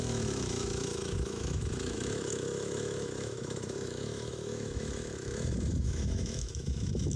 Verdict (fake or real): fake